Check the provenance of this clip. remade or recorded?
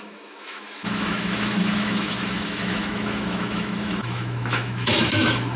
remade